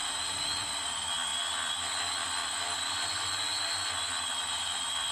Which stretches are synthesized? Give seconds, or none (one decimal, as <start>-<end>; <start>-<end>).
2.4-3.1